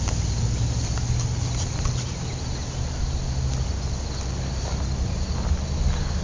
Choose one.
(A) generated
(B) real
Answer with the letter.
B